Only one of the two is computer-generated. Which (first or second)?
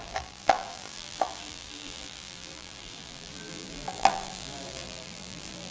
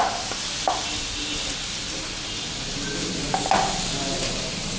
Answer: first